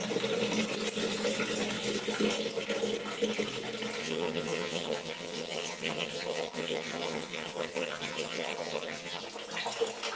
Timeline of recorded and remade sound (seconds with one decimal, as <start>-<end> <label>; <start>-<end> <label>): 0.0-4.0 recorded; 4.0-9.2 remade; 9.2-10.2 recorded